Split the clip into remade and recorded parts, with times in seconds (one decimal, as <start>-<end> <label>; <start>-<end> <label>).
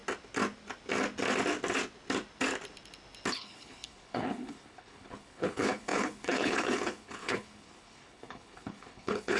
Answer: 0.0-3.3 recorded; 3.3-9.4 remade